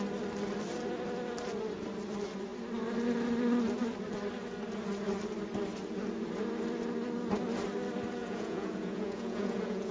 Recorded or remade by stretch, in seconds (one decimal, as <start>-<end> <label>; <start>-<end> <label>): 0.0-8.2 recorded; 8.2-9.9 remade